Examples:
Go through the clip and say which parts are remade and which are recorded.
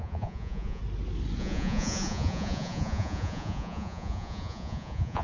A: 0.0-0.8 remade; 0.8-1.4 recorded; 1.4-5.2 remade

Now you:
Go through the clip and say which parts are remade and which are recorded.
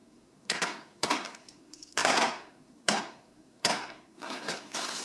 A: 0.0-5.0 remade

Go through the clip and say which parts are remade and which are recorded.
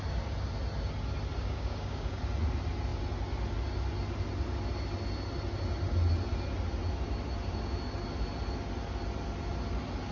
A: 0.0-1.4 recorded; 1.4-2.2 remade; 2.2-10.1 recorded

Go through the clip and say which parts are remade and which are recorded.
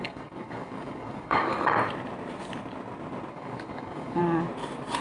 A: 0.0-1.5 remade; 1.5-3.3 recorded; 3.3-4.2 remade; 4.2-5.0 recorded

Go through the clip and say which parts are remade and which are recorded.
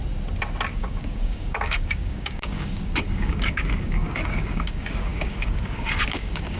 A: 0.0-0.7 recorded; 0.7-6.6 remade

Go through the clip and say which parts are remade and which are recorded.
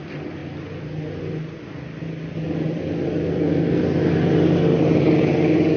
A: 0.0-3.2 recorded; 3.2-3.8 remade; 3.8-5.8 recorded